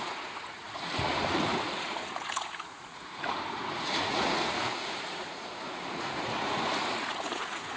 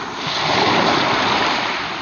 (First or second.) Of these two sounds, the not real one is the first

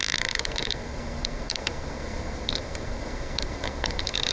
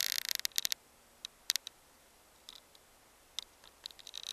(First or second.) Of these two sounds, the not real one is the first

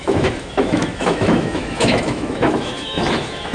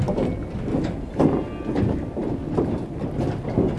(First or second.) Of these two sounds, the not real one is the first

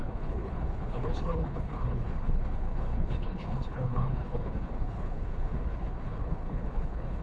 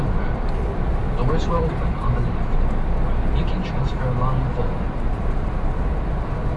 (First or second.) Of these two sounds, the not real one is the first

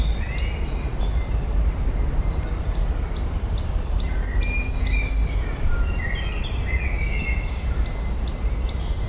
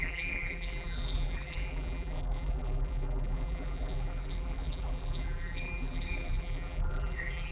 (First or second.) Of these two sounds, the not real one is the second